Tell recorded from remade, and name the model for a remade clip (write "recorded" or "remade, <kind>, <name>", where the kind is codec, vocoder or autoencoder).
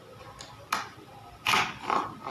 recorded